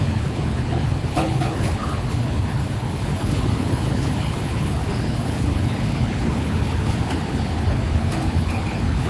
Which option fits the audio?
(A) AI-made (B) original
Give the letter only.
A